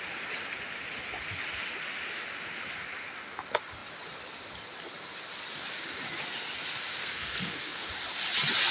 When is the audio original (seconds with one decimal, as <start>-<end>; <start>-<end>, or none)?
0.0-7.0; 7.9-8.7